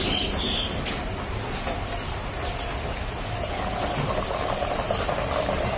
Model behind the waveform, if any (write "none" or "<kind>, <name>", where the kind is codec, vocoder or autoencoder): none